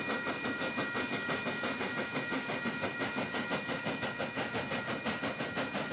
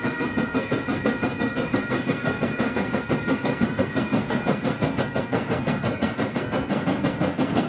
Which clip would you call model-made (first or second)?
second